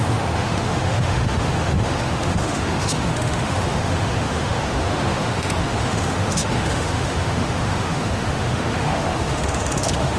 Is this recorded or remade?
remade